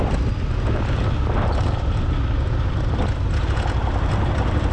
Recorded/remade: recorded